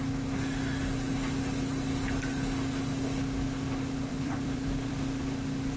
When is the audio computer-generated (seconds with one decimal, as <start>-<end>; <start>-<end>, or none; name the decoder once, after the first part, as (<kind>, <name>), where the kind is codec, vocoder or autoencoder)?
4.1-5.2 (vocoder, BigVGAN v2)